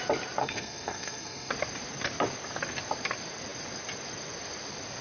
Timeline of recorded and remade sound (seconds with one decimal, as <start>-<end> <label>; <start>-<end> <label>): 0.0-0.4 recorded; 0.4-1.5 remade; 1.5-5.0 recorded